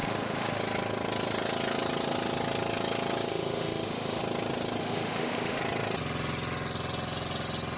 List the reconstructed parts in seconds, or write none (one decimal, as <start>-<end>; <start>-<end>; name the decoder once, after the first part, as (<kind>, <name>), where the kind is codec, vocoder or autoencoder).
0.0-0.6 (autoencoder, DAC-VAE); 3.3-4.2; 4.8-5.6